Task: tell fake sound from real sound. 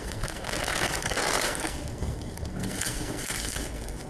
fake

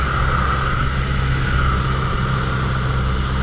real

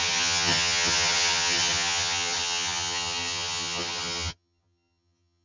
fake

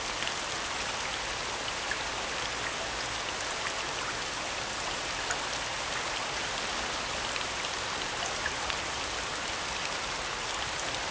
real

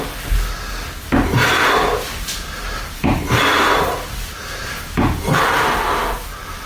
real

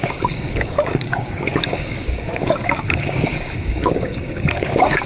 fake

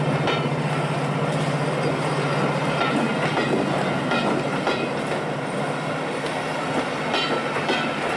real